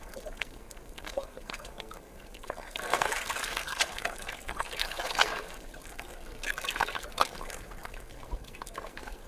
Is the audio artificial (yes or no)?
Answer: yes